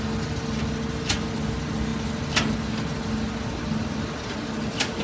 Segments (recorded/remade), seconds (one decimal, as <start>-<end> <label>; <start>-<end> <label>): 0.0-5.0 recorded